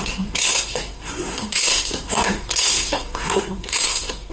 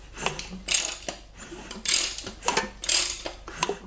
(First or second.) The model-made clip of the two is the first